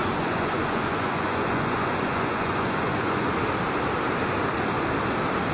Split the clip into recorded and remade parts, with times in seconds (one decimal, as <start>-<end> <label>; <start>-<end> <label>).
0.0-3.3 remade; 3.3-5.5 recorded